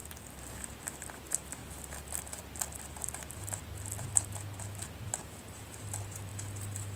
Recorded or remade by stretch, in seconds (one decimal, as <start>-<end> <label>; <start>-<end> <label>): 0.0-0.5 recorded; 0.5-1.6 remade; 1.6-5.4 recorded; 5.4-7.0 remade